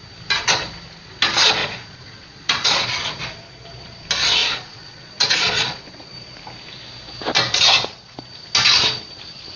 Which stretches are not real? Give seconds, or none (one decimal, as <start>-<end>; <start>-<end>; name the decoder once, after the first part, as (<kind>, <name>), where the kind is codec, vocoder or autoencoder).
1.6-3.2 (vocoder, Vocos); 4.4-6.1